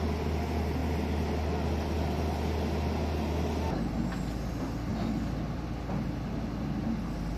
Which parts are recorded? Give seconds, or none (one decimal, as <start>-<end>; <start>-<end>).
0.0-7.4